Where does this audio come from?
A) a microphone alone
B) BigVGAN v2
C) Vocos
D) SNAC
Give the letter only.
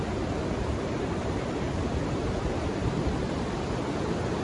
B